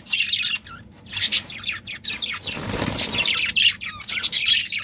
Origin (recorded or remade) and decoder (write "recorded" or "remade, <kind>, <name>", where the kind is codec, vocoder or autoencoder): recorded